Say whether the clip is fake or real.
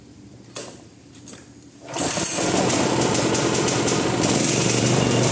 fake